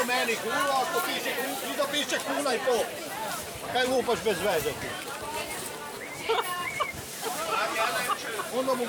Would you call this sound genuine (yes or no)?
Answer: no